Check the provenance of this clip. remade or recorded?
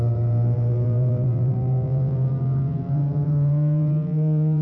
remade